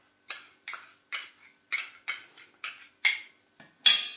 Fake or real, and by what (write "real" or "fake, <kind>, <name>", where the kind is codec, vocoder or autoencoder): real